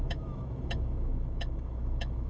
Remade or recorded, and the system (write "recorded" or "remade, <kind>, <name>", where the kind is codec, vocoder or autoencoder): remade, autoencoder, DAC-VAE